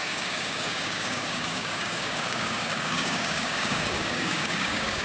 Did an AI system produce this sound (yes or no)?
yes